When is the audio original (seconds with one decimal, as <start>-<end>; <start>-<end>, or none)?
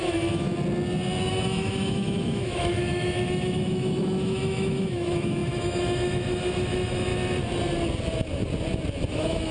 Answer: 0.5-1.3; 7.1-9.1